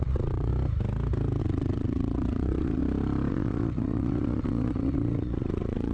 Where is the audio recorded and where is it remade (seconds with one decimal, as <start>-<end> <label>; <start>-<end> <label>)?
0.0-0.5 remade; 0.5-1.4 recorded; 1.4-2.8 remade; 2.8-3.3 recorded; 3.3-5.9 remade